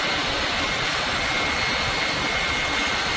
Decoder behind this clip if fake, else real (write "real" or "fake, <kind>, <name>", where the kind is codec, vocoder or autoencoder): real